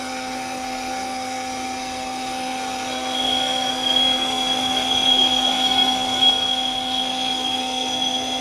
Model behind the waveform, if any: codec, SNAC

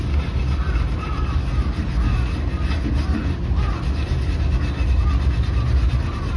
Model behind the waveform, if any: none